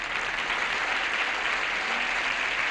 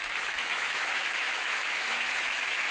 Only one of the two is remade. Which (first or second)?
second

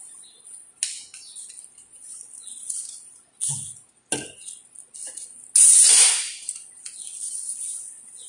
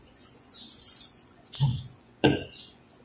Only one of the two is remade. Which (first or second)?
second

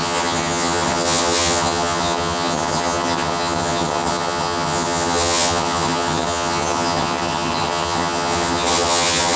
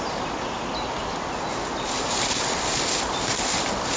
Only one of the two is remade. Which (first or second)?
first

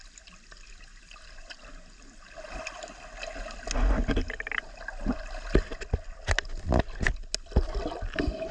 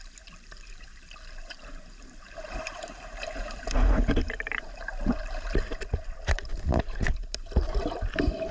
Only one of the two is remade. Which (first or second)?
second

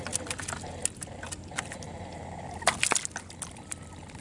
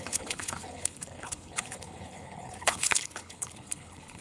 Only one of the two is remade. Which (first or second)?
second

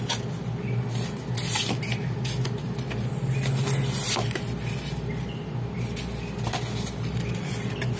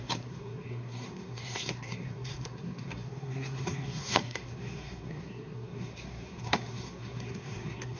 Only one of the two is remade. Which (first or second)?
second